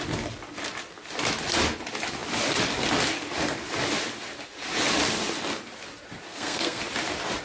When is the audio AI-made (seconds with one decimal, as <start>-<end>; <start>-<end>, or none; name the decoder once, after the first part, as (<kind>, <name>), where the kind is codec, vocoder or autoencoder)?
6.3-6.8 (codec, SNAC)